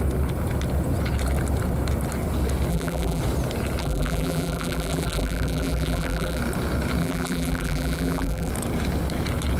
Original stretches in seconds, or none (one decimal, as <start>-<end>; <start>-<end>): 0.0-2.7; 3.2-3.8; 6.4-7.0; 8.5-9.6